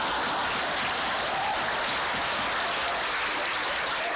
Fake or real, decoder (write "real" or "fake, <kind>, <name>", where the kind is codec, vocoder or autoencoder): real